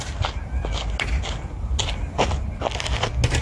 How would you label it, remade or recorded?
recorded